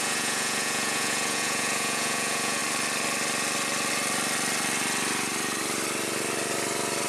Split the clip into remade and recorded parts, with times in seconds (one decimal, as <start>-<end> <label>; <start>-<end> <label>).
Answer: 0.0-2.6 remade; 2.6-7.1 recorded